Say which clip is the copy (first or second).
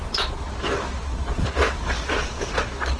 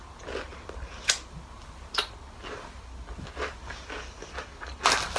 first